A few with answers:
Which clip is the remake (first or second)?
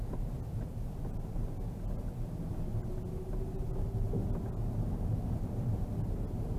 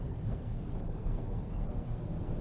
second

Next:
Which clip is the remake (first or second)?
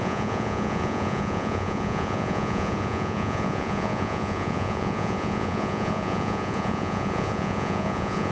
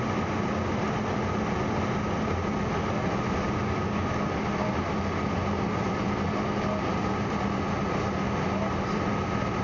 first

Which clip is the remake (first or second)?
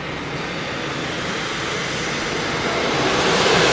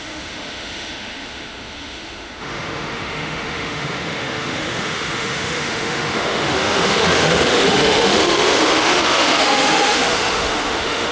second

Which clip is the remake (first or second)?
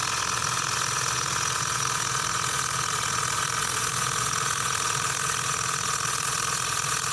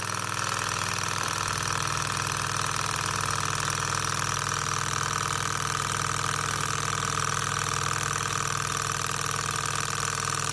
first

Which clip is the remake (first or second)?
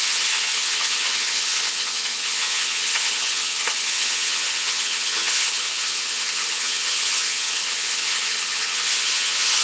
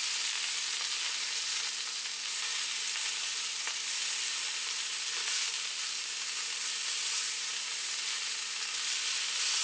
first